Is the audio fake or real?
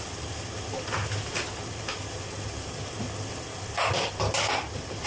real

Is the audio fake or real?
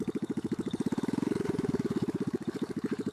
fake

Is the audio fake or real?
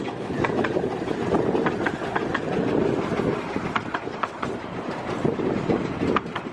real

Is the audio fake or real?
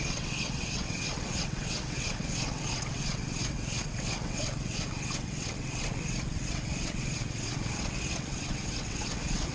fake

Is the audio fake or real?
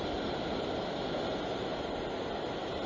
real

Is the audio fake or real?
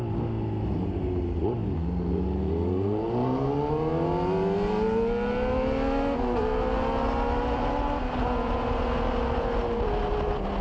real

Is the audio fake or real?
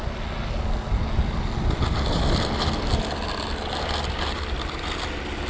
real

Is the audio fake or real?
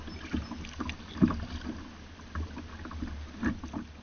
real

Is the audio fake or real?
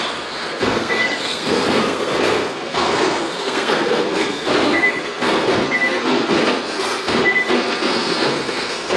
fake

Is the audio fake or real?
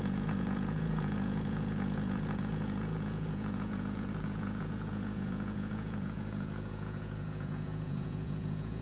fake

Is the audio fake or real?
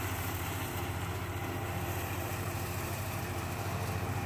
fake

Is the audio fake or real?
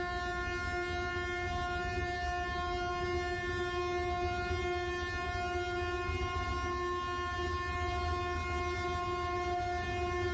real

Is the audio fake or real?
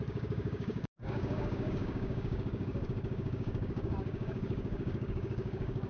fake